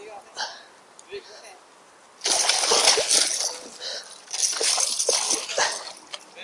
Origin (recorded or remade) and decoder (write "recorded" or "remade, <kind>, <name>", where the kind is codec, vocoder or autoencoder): recorded